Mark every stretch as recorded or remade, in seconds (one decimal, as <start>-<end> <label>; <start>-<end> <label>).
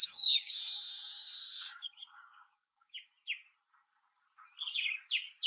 0.0-0.6 remade; 0.6-1.4 recorded; 1.4-3.1 remade; 3.1-5.5 recorded